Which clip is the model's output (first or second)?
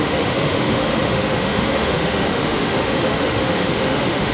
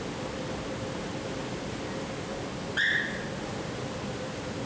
first